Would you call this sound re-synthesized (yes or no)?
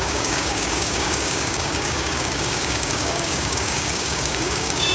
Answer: yes